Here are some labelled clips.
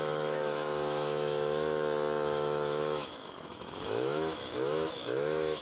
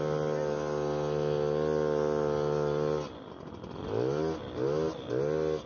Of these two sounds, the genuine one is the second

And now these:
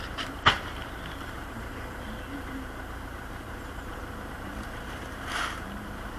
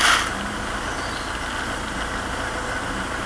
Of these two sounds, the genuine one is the second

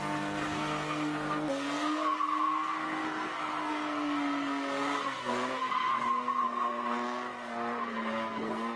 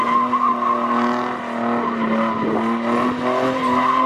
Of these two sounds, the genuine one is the second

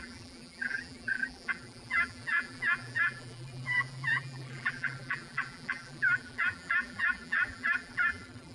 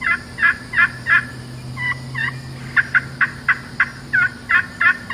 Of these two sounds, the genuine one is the second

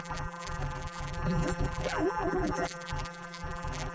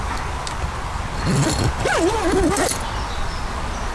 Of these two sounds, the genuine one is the second